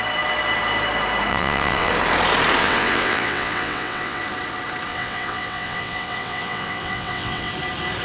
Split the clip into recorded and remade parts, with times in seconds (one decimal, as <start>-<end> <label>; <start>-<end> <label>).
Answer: 0.0-1.3 recorded; 1.3-1.9 remade; 1.9-2.6 recorded; 2.6-4.2 remade; 4.2-4.9 recorded; 4.9-7.5 remade; 7.5-8.0 recorded